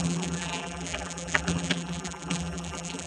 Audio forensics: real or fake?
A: fake